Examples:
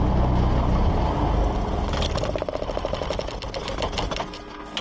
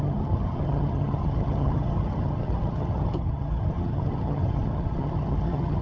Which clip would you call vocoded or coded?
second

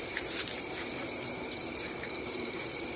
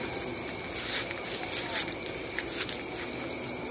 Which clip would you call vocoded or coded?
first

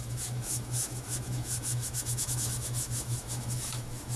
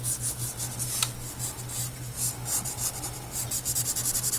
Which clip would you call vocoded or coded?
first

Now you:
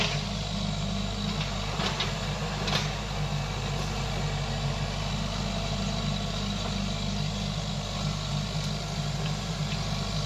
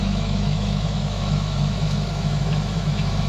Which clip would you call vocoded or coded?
second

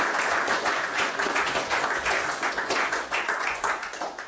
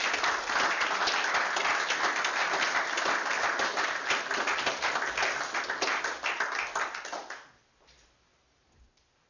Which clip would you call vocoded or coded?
first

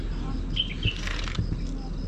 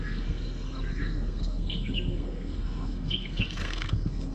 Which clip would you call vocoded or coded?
second